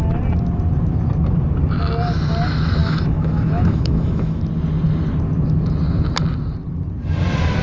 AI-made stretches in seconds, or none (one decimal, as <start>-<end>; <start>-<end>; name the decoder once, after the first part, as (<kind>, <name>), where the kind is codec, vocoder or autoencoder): 2.8-4.4 (autoencoder, DAC-VAE)